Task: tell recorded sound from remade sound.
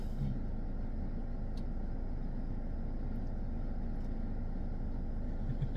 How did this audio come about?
recorded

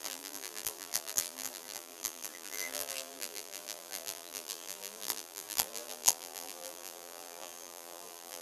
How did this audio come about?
remade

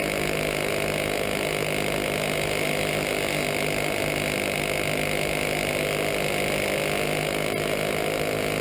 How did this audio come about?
recorded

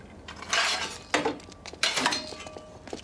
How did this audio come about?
recorded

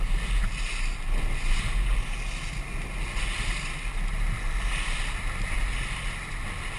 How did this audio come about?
recorded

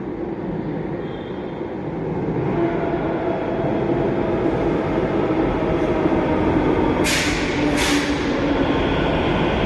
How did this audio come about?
recorded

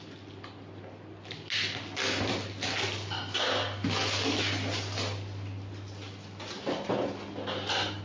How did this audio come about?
recorded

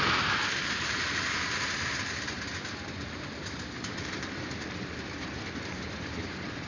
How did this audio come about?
remade